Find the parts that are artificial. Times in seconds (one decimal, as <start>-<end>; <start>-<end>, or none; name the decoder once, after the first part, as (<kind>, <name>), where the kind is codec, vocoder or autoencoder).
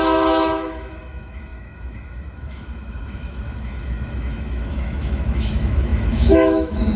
0.0-7.0 (autoencoder, DAC-VAE)